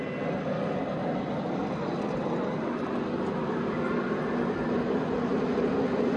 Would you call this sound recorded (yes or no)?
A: yes